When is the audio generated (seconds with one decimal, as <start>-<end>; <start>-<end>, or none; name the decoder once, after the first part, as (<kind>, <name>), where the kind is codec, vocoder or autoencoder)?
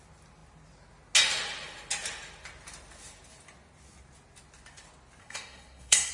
5.2-6.1 (codec, SNAC)